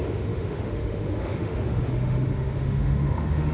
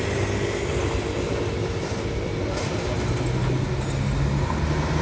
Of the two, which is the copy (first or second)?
first